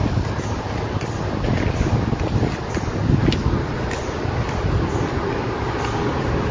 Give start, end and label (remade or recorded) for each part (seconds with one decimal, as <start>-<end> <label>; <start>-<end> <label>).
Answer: 0.0-6.5 recorded